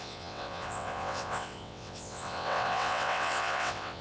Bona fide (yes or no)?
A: no